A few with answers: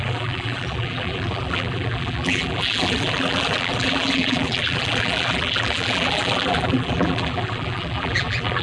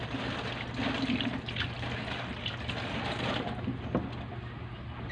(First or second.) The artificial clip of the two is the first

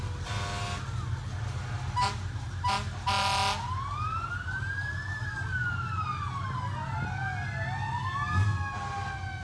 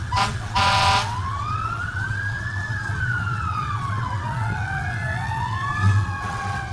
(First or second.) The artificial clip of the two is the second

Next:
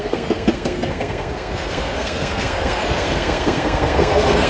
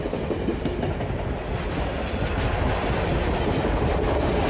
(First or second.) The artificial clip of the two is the first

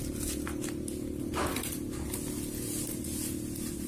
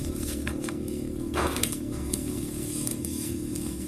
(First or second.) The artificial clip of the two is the second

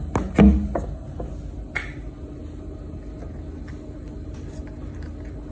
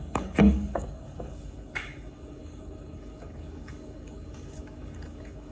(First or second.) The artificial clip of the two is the second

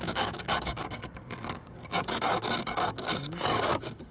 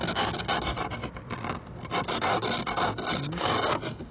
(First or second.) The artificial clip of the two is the first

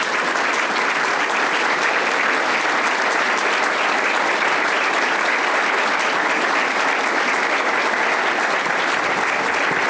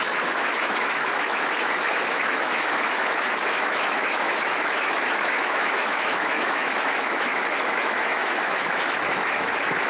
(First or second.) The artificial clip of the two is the second